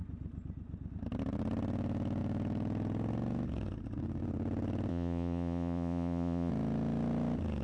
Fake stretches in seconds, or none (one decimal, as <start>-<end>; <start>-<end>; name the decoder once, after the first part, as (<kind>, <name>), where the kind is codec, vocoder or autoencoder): 4.9-6.5 (vocoder, Vocos)